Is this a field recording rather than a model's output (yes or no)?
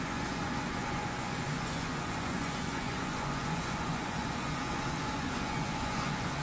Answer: no